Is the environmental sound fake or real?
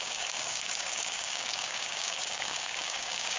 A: fake